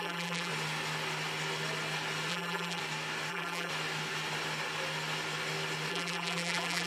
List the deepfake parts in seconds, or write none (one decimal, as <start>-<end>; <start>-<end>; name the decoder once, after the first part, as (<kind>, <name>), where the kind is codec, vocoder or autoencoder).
0.0-0.5 (vocoder, BigVGAN v2); 2.3-2.8; 3.3-3.7; 5.9-6.9